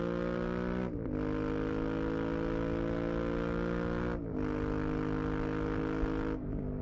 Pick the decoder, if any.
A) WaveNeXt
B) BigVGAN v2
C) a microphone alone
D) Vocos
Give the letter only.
C